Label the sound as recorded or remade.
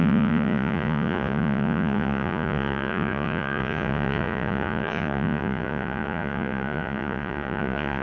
remade